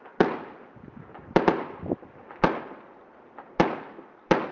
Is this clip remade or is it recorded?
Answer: recorded